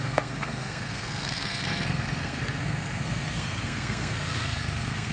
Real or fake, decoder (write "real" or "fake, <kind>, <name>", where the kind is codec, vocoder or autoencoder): fake, codec, SNAC